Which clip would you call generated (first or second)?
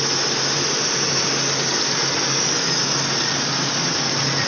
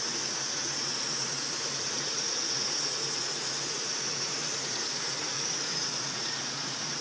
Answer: second